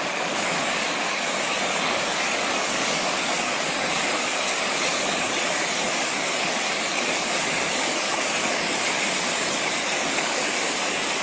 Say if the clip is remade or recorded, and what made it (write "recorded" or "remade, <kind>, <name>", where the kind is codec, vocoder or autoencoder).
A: remade, codec, DAC